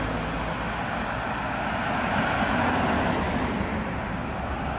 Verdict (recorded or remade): recorded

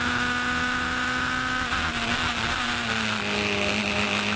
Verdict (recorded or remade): recorded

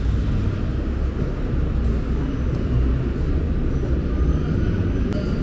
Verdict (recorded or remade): recorded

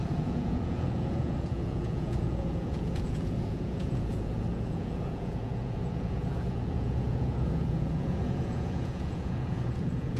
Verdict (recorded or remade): remade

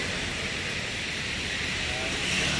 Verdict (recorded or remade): recorded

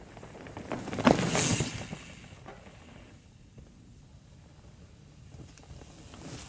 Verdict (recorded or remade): recorded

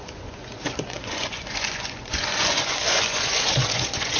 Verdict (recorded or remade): remade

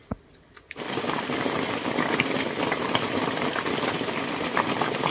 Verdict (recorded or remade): recorded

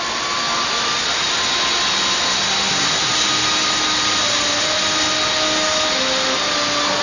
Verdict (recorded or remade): recorded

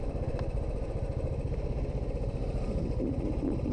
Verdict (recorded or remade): recorded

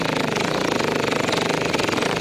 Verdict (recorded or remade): recorded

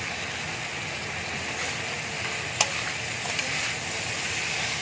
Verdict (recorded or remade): recorded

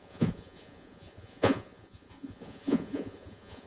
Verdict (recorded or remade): remade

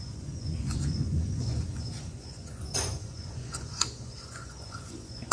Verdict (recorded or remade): remade